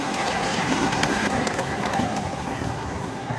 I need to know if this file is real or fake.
fake